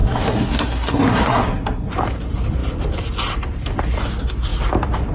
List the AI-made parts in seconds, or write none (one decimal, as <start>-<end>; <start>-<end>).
0.0-1.9